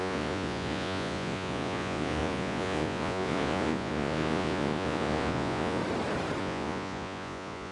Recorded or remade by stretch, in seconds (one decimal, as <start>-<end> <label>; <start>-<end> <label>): 0.0-5.8 remade; 5.8-6.4 recorded; 6.4-7.7 remade